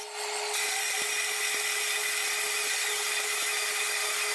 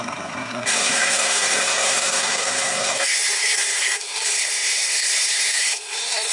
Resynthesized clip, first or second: second